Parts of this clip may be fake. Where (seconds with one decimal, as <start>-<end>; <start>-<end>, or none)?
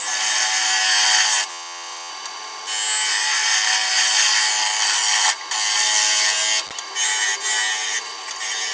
1.5-2.1